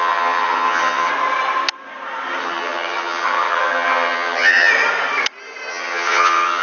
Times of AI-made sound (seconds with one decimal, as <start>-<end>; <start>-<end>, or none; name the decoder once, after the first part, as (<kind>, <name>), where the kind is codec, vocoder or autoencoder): 0.0-1.1 (vocoder, HiFi-GAN); 2.4-4.7; 5.7-6.6

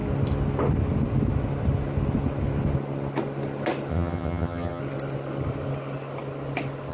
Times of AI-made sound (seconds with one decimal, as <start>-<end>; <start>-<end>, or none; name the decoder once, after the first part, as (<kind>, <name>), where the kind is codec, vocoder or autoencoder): 3.9-4.8 (vocoder, HiFi-GAN)

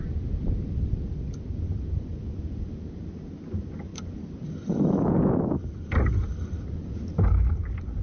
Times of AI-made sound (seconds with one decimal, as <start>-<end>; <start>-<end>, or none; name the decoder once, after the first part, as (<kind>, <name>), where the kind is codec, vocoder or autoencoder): none

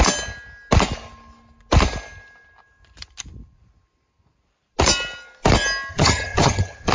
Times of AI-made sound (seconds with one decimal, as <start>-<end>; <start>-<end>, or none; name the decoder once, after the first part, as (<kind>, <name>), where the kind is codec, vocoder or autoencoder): 5.9-6.9 (vocoder, HiFi-GAN)

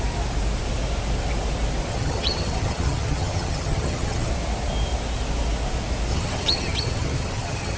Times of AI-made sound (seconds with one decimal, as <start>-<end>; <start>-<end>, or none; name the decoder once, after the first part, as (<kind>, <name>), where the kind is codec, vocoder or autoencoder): 1.9-4.3 (vocoder, HiFi-GAN); 6.1-7.8